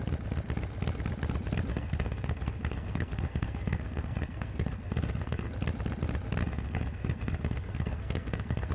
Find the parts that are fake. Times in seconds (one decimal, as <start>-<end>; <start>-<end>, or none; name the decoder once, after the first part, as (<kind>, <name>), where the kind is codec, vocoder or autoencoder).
1.7-5.5 (codec, SNAC); 6.4-8.7